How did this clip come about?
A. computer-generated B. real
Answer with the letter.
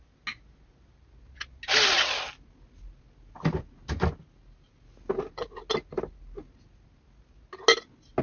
B